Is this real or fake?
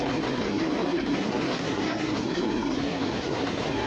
fake